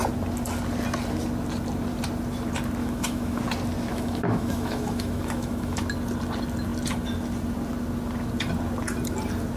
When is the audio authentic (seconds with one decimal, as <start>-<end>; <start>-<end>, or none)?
0.0-2.8; 3.4-3.9; 5.8-9.6